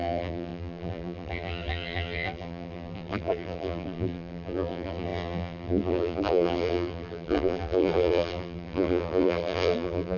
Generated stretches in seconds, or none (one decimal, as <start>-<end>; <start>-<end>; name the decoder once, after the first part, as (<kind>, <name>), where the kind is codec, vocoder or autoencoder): 0.0-10.2 (vocoder, BigVGAN v2)